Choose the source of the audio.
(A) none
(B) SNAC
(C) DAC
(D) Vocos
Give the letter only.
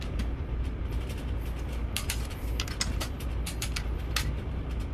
A